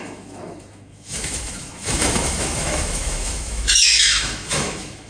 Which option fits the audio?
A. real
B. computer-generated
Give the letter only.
B